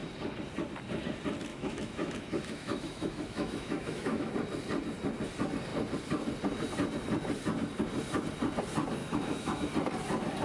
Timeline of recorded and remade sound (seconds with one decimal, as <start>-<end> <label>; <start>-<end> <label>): 0.0-1.5 recorded; 1.5-4.3 remade; 4.3-9.0 recorded; 9.0-9.7 remade; 9.7-10.4 recorded

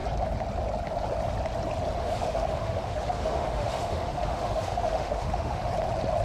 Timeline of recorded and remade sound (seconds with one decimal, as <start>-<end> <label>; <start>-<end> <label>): 0.0-2.0 recorded; 2.0-5.7 remade; 5.7-6.2 recorded

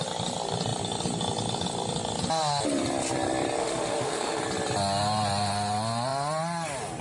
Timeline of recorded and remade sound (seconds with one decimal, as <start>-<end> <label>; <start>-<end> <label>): 0.0-3.6 recorded; 3.6-4.4 remade; 4.4-7.0 recorded

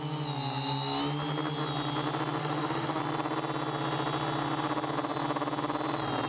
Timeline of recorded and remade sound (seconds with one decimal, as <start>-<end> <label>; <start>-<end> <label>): 0.0-2.4 recorded; 2.4-3.0 remade; 3.0-6.3 recorded